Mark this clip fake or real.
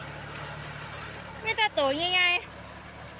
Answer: real